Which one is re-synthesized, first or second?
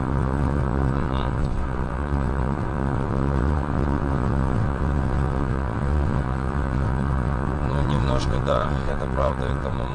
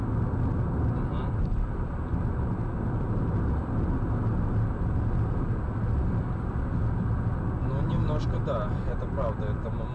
first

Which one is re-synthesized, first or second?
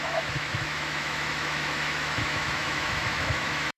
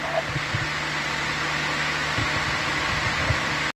first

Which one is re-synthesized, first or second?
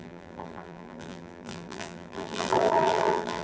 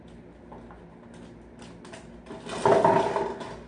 first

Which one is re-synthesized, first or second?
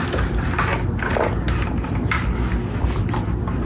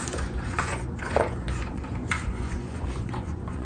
second